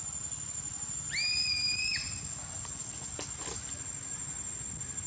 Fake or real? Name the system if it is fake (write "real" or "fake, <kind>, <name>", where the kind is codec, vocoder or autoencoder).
real